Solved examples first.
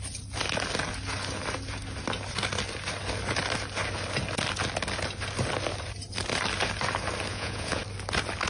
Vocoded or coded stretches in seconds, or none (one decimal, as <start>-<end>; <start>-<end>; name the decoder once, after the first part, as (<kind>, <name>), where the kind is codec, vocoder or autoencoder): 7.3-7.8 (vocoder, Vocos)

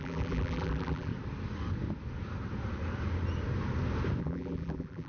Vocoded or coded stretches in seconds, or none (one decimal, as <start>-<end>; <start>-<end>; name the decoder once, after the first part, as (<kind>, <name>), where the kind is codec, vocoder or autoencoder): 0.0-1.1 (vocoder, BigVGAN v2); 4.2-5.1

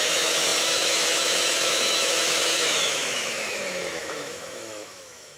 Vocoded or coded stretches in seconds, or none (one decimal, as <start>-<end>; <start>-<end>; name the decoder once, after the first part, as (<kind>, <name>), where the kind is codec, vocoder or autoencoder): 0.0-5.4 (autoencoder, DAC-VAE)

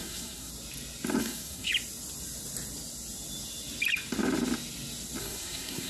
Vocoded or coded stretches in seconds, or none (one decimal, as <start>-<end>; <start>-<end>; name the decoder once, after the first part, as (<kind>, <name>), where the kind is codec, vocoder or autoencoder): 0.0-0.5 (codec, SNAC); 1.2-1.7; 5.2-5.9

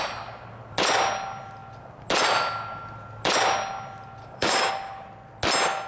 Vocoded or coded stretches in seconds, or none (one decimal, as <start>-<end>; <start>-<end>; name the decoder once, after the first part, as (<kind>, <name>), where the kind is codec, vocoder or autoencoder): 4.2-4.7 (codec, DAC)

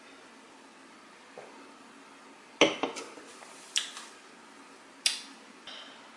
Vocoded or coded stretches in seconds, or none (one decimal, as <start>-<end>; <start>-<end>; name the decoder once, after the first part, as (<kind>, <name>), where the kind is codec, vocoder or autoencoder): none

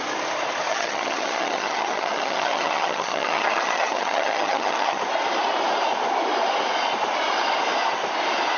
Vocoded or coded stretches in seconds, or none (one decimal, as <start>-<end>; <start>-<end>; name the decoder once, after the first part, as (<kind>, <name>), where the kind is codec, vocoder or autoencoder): 0.7-5.0 (vocoder, HiFi-GAN)